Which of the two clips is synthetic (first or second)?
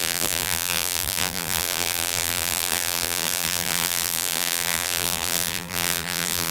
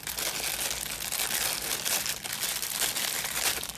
first